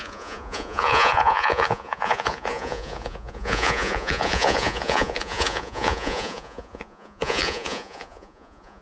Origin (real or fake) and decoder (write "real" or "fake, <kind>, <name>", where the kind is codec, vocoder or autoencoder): fake, vocoder, Vocos